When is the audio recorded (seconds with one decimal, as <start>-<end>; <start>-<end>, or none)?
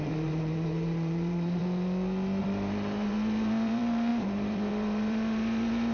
1.6-2.4